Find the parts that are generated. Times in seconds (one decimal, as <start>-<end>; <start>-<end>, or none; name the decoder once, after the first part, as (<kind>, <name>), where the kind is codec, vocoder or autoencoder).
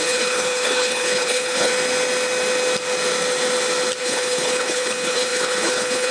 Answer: 0.0-1.7 (codec, HILCodec); 4.0-6.1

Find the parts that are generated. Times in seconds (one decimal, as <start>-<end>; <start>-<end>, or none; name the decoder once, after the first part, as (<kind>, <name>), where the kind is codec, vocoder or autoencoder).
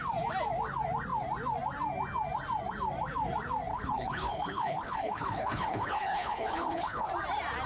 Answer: 3.7-7.1 (codec, HILCodec)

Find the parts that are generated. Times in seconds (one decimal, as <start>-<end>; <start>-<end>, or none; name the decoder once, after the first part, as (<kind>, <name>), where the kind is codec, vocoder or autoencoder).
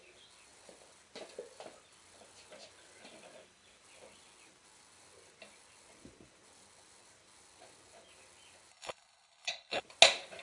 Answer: 8.7-9.8 (codec, HILCodec)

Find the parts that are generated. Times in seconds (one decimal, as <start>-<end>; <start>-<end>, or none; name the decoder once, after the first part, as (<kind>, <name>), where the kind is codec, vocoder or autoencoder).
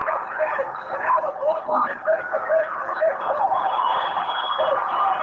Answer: 0.0-2.2 (codec, HILCodec); 2.6-4.5